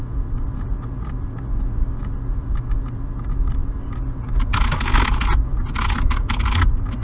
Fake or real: real